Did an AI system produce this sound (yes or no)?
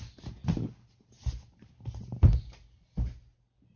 no